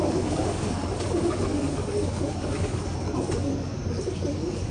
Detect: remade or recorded remade